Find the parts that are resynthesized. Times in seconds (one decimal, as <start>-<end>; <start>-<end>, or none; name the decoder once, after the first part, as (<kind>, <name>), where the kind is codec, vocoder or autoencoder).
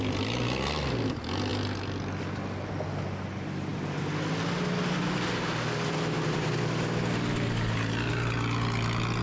none